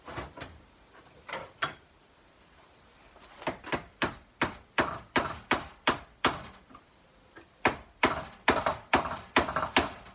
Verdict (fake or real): fake